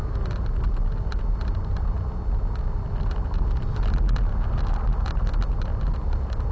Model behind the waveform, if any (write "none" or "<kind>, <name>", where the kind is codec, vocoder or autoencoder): none